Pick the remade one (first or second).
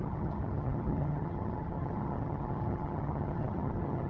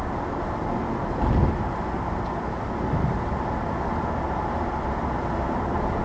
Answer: first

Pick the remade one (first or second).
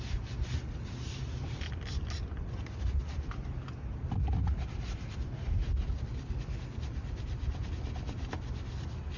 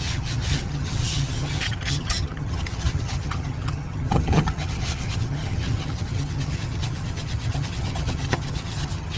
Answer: second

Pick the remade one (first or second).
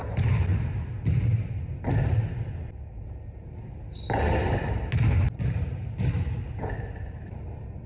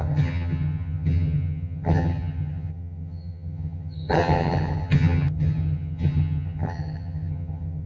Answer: second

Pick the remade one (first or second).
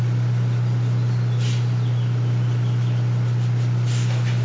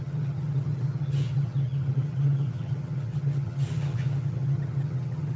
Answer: second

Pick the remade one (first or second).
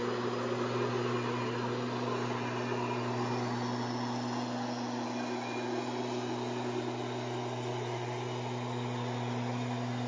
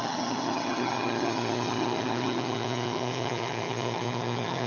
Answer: second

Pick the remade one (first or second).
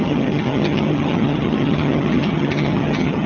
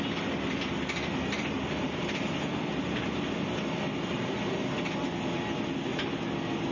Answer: first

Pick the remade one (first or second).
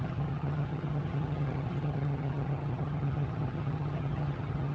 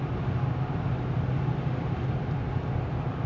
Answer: first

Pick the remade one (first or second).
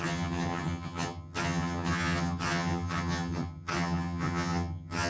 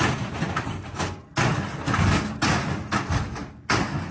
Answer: first